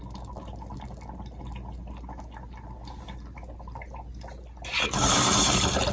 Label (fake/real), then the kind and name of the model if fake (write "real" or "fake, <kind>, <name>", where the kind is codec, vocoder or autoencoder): real